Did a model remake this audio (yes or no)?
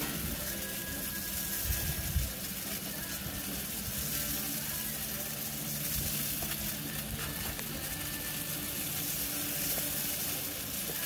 no